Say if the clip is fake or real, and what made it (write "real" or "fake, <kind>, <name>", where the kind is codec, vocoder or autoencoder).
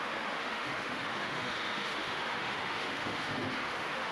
fake, autoencoder, DAC-VAE